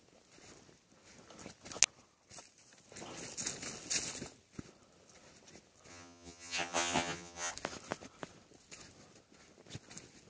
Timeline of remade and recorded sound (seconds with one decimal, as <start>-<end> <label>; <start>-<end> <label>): 0.0-5.9 recorded; 5.9-7.5 remade; 7.5-10.3 recorded